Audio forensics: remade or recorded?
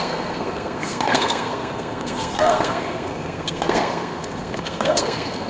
remade